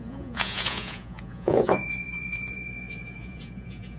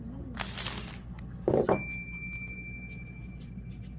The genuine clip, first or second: second